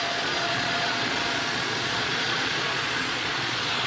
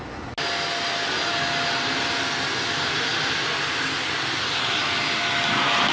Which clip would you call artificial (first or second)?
first